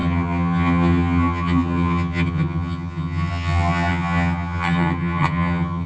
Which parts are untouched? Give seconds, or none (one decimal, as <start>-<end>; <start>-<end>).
none